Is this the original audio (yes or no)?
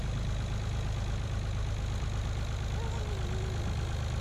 yes